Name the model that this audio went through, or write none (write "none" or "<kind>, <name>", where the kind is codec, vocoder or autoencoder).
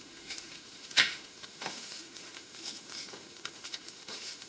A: autoencoder, DAC-VAE